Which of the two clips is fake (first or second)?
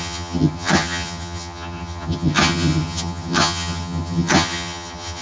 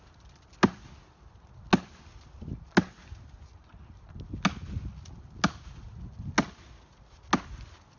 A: first